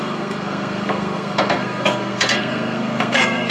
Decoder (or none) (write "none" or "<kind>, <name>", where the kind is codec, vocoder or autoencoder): codec, SNAC